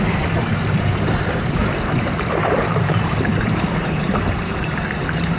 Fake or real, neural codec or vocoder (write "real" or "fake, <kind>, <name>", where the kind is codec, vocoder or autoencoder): fake, vocoder, BigVGAN v2